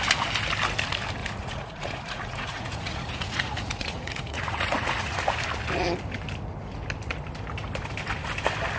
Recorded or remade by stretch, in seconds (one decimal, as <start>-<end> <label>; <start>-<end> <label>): 0.0-1.2 recorded; 1.2-5.2 remade; 5.2-8.8 recorded